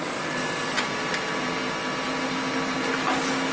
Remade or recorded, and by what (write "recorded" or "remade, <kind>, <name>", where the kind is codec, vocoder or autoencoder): recorded